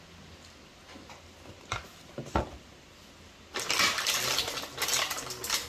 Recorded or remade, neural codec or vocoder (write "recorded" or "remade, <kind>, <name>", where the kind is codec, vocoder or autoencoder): recorded